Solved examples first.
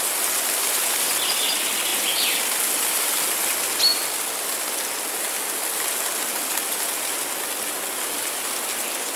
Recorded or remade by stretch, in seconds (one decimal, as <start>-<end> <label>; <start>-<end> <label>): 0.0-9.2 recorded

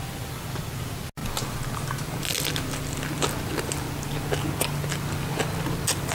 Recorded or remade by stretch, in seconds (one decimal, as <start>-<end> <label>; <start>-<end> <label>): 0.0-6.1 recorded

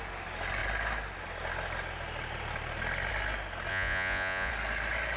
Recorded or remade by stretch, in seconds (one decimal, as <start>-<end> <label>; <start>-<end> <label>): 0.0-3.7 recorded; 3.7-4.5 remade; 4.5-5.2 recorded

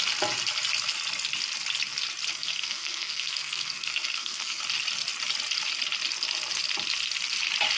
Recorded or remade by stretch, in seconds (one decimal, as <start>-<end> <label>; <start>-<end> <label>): 0.0-2.3 recorded; 2.3-4.6 remade; 4.6-7.8 recorded

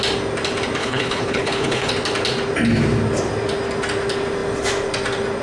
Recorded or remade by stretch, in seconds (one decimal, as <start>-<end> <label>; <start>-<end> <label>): 0.0-0.8 recorded; 0.8-1.9 remade; 1.9-5.4 recorded